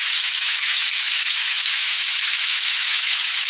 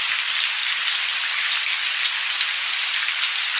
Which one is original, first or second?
second